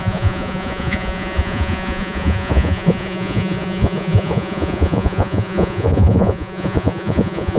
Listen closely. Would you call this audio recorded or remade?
remade